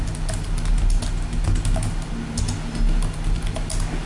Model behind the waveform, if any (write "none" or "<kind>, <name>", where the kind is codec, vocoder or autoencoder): none